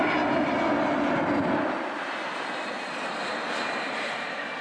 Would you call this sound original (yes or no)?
yes